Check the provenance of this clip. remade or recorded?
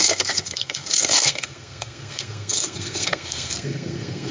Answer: remade